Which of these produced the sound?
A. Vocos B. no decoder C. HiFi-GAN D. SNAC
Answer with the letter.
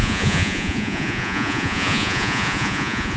A